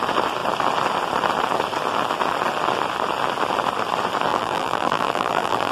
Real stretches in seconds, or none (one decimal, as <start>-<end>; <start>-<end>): 0.0-4.3